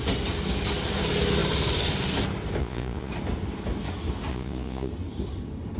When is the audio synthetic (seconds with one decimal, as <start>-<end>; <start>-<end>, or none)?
2.6-3.1; 4.3-4.9